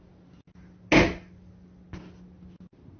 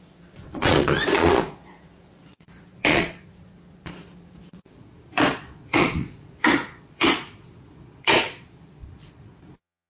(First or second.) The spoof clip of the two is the second